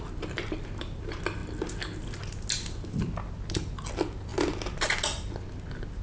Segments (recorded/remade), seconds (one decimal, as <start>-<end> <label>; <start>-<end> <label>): 0.0-6.0 recorded